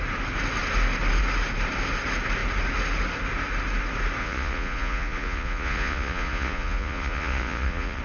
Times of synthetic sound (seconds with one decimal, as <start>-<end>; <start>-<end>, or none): 4.2-8.0